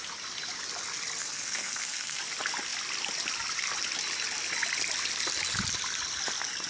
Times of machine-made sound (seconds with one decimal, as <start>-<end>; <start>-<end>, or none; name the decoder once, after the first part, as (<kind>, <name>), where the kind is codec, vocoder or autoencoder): 1.2-2.2 (codec, SNAC)